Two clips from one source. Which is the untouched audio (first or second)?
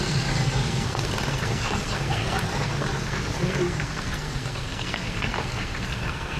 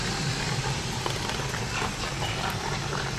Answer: second